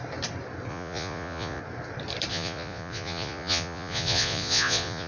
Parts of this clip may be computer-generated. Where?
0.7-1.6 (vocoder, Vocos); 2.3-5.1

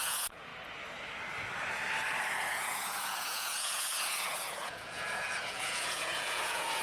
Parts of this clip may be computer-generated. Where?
0.0-0.5 (vocoder, Vocos); 2.5-6.8

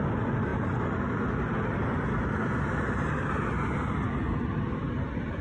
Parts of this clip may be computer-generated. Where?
none

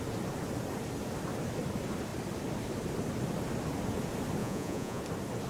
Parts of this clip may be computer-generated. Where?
4.4-5.0 (vocoder, Vocos)

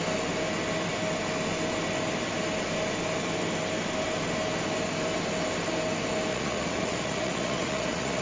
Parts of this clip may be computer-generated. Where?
6.3-8.2 (vocoder, Vocos)